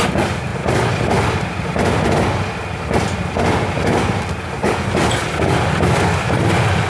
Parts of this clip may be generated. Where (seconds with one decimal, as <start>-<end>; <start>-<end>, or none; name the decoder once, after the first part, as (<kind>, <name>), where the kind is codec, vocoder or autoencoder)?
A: none